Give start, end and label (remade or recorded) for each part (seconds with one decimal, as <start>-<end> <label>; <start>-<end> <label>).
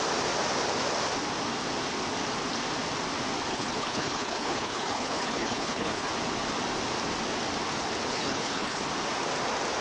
0.0-3.5 recorded; 3.5-6.1 remade; 6.1-8.1 recorded; 8.1-8.8 remade; 8.8-9.8 recorded